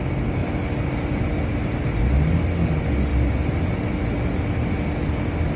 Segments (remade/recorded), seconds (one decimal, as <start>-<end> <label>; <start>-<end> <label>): 0.0-5.6 recorded